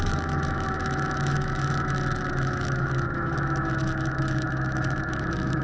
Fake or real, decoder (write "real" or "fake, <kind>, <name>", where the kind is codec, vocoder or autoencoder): fake, autoencoder, DAC-VAE